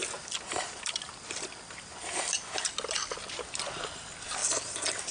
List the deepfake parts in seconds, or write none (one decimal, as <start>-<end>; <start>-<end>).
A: 0.0-3.1; 4.4-5.1